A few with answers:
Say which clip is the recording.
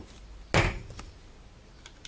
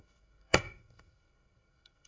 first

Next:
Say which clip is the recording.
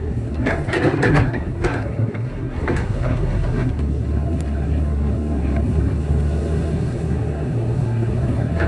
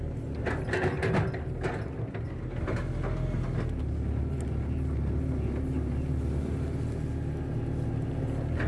second